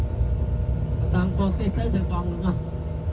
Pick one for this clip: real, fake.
real